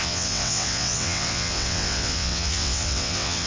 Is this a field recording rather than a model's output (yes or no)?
no